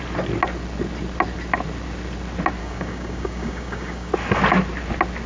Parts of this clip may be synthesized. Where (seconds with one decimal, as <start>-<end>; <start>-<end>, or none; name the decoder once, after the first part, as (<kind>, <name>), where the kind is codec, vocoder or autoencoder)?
2.6-4.1 (codec, DAC)